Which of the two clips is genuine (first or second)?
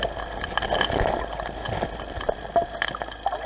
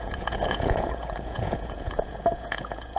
first